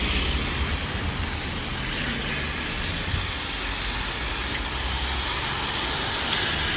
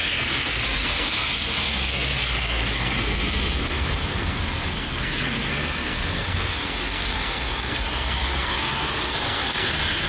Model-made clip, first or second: second